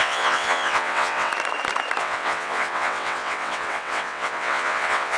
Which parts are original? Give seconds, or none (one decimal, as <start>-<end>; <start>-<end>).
1.3-2.0